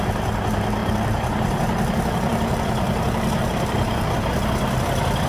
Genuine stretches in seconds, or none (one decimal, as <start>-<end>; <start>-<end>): 0.0-0.8; 4.0-5.3